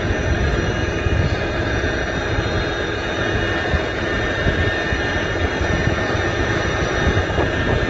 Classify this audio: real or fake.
fake